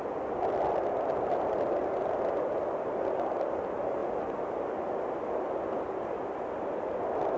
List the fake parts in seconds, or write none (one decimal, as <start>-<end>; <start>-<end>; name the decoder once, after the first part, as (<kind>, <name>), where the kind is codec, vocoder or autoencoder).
none